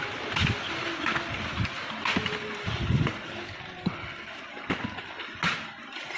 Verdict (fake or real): real